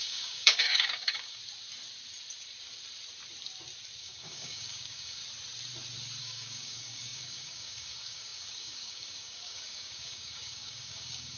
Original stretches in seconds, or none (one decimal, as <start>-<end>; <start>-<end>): 1.4-4.0; 5.2-6.2